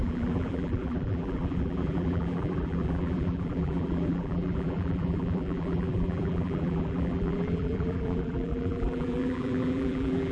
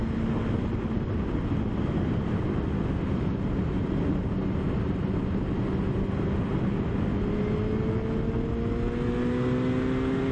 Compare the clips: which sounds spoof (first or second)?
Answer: first